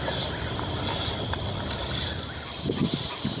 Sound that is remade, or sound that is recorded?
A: recorded